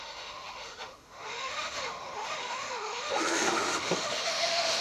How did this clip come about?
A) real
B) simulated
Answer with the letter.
B